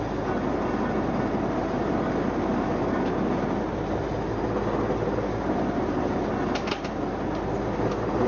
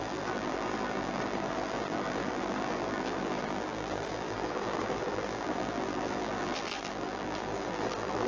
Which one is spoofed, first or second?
second